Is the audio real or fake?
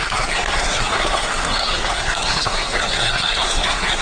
fake